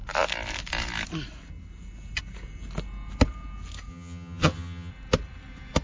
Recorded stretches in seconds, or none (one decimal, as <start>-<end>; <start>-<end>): 0.0-3.9; 4.9-5.8